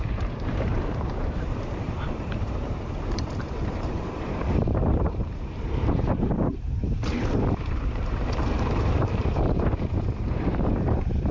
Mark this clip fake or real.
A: fake